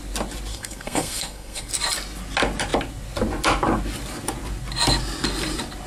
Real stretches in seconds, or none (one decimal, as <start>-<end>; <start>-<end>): 0.0-0.5; 1.7-5.9